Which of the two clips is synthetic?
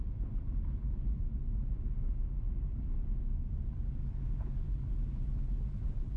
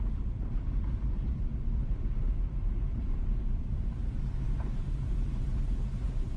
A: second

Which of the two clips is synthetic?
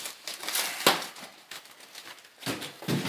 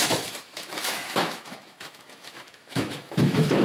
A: second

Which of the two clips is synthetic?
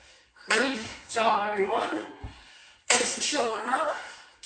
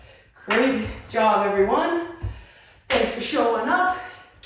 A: first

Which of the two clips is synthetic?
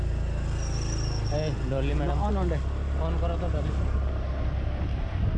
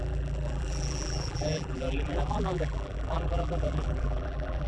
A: second